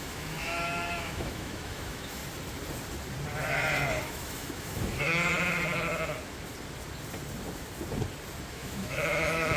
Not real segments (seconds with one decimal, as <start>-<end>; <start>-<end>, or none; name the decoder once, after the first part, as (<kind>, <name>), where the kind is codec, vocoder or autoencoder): 0.0-2.2 (autoencoder, DAC-VAE); 4.0-5.3; 8.5-9.6